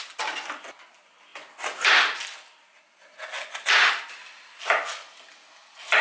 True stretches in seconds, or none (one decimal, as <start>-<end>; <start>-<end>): 0.0-6.0